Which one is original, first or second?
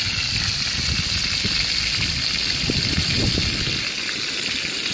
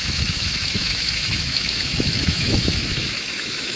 first